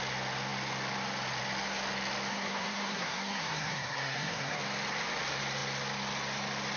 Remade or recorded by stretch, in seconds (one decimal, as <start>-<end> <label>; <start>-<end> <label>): 0.0-2.3 recorded; 2.3-4.6 remade; 4.6-6.8 recorded

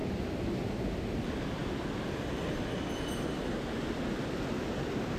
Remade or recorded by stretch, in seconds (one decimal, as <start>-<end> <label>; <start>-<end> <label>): 0.0-0.7 remade; 0.7-5.2 recorded

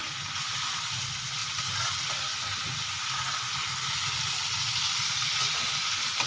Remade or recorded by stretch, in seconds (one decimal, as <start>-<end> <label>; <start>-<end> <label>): 0.0-6.3 recorded

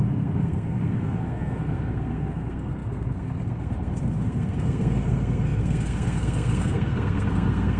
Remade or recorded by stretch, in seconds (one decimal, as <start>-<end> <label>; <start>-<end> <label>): 0.0-7.8 remade